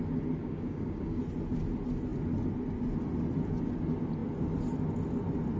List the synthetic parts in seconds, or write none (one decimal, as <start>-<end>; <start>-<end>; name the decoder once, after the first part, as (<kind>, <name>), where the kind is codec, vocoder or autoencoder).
0.4-1.2 (codec, DAC)